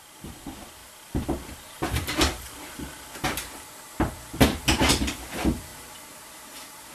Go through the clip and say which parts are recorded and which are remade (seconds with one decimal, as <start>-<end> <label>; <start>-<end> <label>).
0.0-0.8 remade; 0.8-4.9 recorded; 4.9-5.7 remade; 5.7-6.9 recorded